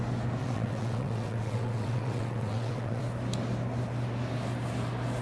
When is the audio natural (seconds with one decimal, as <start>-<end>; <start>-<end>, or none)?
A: 0.0-0.4; 3.0-5.2